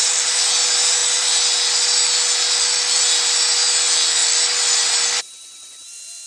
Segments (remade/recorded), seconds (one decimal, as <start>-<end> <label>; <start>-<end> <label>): 0.0-6.3 recorded